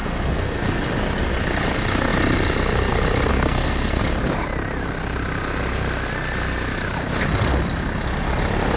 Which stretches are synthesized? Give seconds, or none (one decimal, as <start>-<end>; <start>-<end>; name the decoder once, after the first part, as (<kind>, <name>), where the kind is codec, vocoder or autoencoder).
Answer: 0.0-0.8 (codec, SNAC); 3.3-4.0

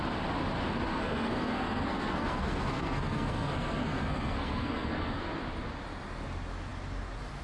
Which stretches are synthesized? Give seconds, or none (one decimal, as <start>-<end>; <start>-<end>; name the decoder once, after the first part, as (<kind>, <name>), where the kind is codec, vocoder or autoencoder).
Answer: 0.9-5.3 (codec, SNAC)